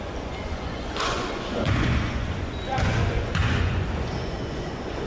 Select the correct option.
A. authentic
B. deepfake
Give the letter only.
B